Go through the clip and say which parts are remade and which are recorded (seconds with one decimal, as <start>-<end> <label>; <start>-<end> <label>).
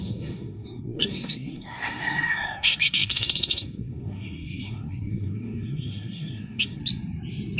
0.0-6.8 remade; 6.8-7.6 recorded